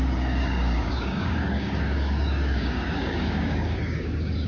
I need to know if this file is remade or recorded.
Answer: remade